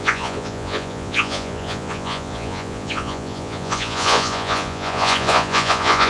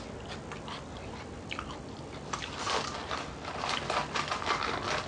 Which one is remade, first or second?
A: first